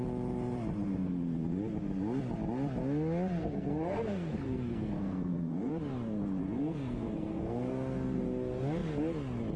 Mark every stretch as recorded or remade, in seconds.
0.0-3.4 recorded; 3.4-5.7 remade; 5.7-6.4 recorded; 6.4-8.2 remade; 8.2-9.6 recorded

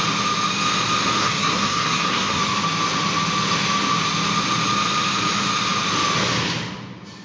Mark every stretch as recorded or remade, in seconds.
0.0-1.2 recorded; 1.2-2.4 remade; 2.4-7.2 recorded

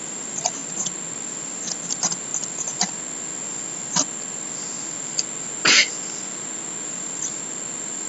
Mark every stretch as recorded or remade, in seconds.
0.0-8.1 recorded

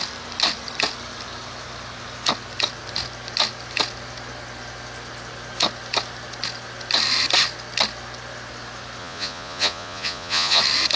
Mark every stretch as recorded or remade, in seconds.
0.0-9.0 recorded; 9.0-10.6 remade; 10.6-11.0 recorded

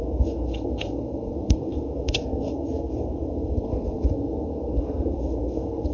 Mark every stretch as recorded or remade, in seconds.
0.0-5.9 remade